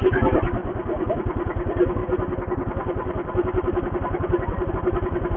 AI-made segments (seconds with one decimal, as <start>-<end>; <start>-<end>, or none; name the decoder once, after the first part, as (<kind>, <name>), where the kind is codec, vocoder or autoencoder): none